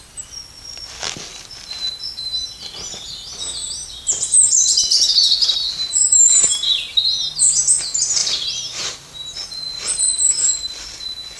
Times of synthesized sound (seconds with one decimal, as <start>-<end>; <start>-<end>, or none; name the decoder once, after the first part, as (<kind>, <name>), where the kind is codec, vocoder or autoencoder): 1.3-5.9 (vocoder, BigVGAN v2); 8.2-9.9